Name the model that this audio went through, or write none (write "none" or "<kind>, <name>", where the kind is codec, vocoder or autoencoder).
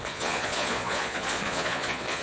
vocoder, Vocos